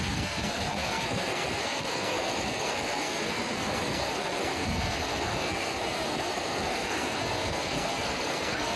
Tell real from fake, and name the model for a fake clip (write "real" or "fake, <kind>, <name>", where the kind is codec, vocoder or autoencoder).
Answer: fake, codec, SNAC